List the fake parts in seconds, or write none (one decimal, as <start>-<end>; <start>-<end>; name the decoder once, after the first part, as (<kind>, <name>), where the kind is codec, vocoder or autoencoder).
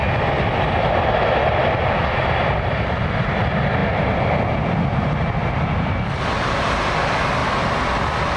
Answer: none